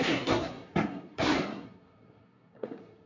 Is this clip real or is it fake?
fake